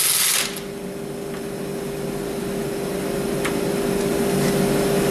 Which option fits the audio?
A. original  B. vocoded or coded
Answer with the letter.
A